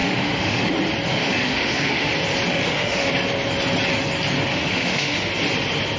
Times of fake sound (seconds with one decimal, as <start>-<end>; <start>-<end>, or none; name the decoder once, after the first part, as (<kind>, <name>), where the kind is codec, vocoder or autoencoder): 0.0-0.7 (autoencoder, DAC-VAE); 1.1-2.1; 2.5-3.1; 4.5-5.3